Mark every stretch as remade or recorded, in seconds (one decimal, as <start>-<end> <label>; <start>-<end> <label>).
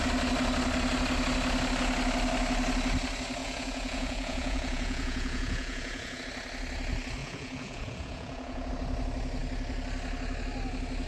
0.0-3.4 recorded; 3.4-6.2 remade; 6.2-7.2 recorded; 7.2-8.7 remade; 8.7-11.1 recorded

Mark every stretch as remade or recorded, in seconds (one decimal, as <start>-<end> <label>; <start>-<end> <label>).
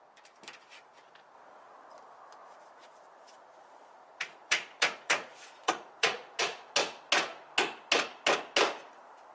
0.0-2.4 recorded; 2.4-6.4 remade; 6.4-9.3 recorded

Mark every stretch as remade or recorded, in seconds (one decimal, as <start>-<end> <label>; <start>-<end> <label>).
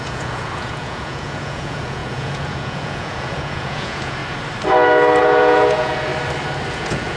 0.0-4.2 remade; 4.2-5.2 recorded; 5.2-6.1 remade; 6.1-6.7 recorded; 6.7-7.2 remade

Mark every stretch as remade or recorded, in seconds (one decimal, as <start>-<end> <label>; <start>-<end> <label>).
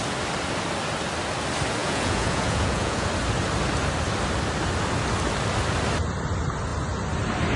0.0-1.8 recorded; 1.8-3.1 remade; 3.1-7.6 recorded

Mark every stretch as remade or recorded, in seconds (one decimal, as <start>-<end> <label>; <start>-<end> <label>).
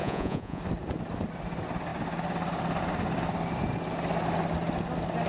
0.0-0.6 remade; 0.6-5.3 recorded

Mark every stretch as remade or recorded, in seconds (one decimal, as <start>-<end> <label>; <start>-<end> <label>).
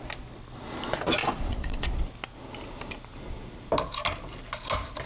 0.0-1.2 recorded; 1.2-2.0 remade; 2.0-5.1 recorded